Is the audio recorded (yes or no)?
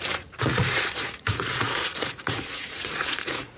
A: no